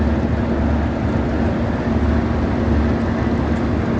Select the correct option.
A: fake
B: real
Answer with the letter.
B